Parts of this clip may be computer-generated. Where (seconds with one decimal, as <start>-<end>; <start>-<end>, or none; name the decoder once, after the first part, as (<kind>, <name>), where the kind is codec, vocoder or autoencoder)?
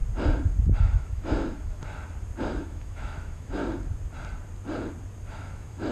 0.8-1.8 (autoencoder, DAC-VAE); 2.4-3.6; 5.3-5.9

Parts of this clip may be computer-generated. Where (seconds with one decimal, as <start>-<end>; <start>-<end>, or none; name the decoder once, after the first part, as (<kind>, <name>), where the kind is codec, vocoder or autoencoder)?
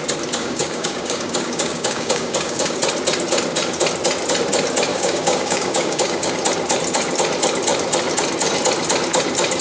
0.4-2.8 (codec, DAC); 4.9-6.3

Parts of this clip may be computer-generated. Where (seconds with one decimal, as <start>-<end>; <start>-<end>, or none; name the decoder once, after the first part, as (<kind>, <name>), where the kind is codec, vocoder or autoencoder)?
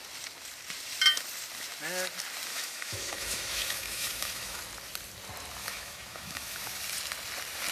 2.5-4.6 (autoencoder, DAC-VAE); 5.6-6.8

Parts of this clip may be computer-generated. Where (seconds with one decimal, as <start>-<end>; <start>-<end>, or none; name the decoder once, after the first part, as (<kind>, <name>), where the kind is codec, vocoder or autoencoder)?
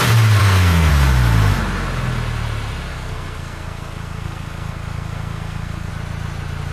0.4-0.9 (codec, SNAC); 2.9-5.9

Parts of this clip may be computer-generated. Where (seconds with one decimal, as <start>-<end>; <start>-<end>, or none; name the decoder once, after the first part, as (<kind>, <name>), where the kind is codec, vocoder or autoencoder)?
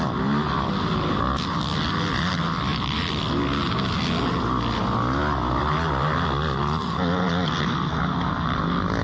none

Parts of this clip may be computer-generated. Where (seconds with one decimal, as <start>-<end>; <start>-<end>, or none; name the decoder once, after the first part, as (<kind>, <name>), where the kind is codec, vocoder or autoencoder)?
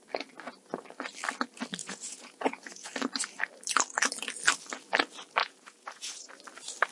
1.8-2.9 (vocoder, Vocos); 5.4-6.3